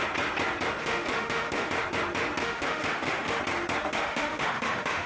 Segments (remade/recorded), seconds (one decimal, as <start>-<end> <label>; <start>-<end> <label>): 0.0-0.8 recorded; 0.8-1.7 remade; 1.7-2.4 recorded; 2.4-3.4 remade; 3.4-3.9 recorded; 3.9-5.1 remade

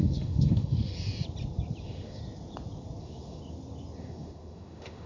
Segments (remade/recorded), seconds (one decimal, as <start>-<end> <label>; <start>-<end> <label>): 0.0-0.9 remade; 0.9-1.8 recorded; 1.8-2.2 remade; 2.2-3.0 recorded; 3.0-3.4 remade; 3.4-4.0 recorded; 4.0-5.1 remade

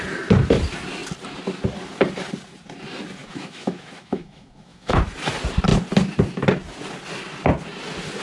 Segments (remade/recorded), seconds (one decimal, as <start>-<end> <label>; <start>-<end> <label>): 0.0-3.2 recorded; 3.2-5.0 remade; 5.0-8.2 recorded

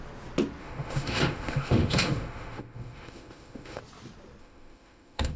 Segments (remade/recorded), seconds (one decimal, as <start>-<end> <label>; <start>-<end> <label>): 0.0-0.6 recorded; 0.6-3.8 remade; 3.8-4.4 recorded; 4.4-5.4 remade

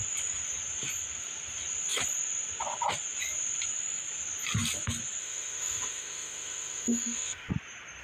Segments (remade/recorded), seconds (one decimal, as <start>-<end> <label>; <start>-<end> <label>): 0.0-5.2 recorded; 5.2-7.5 remade; 7.5-8.0 recorded

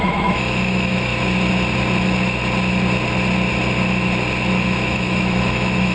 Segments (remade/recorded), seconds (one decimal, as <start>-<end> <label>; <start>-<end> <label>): 0.0-1.1 remade; 1.1-4.6 recorded; 4.6-5.9 remade

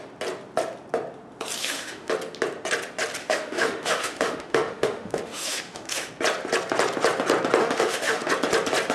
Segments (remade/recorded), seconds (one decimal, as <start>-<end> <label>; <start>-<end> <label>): 0.0-1.6 recorded; 1.6-2.1 remade; 2.1-3.2 recorded; 3.2-6.1 remade; 6.1-7.6 recorded; 7.6-8.3 remade; 8.3-8.9 recorded